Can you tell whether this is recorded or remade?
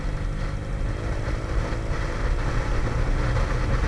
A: recorded